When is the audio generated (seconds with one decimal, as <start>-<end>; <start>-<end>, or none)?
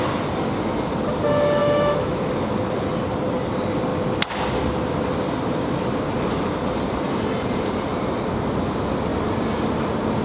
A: 1.6-2.3